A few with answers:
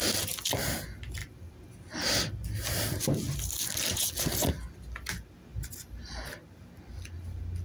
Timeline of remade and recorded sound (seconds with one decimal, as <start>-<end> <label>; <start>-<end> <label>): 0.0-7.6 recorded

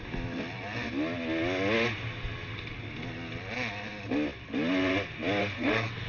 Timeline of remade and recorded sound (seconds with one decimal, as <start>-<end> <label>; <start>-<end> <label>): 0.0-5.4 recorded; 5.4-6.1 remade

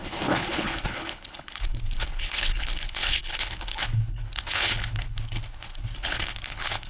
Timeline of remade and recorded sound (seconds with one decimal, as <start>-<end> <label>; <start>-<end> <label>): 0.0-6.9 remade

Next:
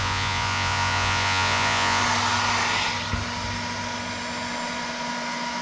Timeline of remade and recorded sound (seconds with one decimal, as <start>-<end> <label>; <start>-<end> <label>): 0.0-2.0 remade; 2.0-5.6 recorded

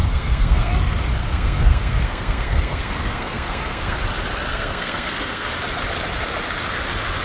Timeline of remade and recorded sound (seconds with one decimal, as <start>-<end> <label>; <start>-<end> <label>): 0.0-0.7 remade; 0.7-1.2 recorded; 1.2-4.0 remade; 4.0-4.5 recorded; 4.5-5.5 remade; 5.5-7.2 recorded

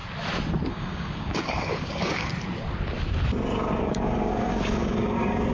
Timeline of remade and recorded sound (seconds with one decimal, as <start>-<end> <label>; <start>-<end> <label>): 0.0-0.7 recorded; 0.7-2.3 remade; 2.3-3.8 recorded; 3.8-5.5 remade